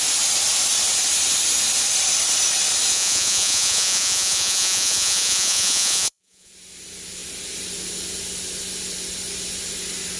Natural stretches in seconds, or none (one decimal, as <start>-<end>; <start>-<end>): 0.0-2.9; 6.5-10.2